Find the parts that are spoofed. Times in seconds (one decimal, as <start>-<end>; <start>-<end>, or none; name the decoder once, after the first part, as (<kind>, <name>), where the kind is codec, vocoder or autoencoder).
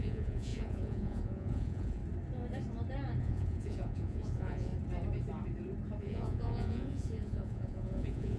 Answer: 0.0-2.0 (vocoder, Vocos); 3.2-4.7; 6.0-8.4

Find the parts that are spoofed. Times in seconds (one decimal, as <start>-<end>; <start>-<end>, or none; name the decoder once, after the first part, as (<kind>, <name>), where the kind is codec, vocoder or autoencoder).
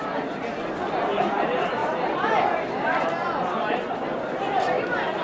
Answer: none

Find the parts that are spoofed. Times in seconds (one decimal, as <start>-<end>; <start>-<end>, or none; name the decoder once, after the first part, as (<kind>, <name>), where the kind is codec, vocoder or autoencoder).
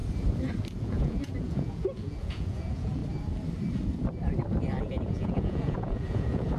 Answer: 0.8-3.0 (vocoder, Vocos); 4.8-6.6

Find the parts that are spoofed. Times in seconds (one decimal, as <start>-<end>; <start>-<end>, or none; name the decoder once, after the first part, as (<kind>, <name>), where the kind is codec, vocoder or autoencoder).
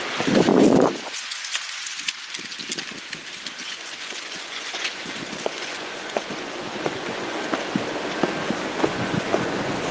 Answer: 0.5-2.2 (vocoder, Vocos); 3.6-7.4; 8.9-9.9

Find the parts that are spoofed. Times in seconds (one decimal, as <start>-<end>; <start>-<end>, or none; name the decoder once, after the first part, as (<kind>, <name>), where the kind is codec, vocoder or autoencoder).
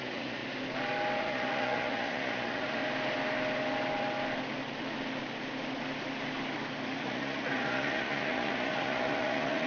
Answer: 0.0-0.4 (vocoder, Vocos); 1.2-2.8; 7.0-9.7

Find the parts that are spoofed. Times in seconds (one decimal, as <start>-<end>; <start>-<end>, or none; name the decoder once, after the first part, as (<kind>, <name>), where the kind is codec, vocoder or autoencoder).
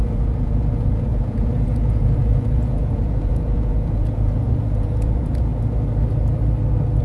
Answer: 0.0-5.5 (vocoder, Vocos)